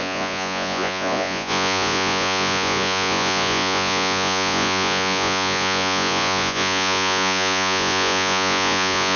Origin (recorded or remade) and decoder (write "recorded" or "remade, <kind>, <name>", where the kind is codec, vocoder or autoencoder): remade, vocoder, Vocos